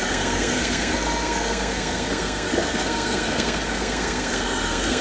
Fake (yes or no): yes